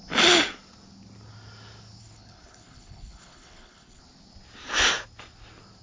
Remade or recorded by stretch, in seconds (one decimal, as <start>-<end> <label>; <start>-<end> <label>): 0.0-2.0 recorded; 2.0-4.0 remade; 4.0-5.8 recorded